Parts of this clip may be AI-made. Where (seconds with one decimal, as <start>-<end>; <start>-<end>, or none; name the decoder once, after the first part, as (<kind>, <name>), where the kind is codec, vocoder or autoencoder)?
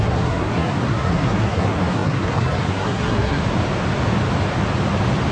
0.0-3.4 (codec, SNAC)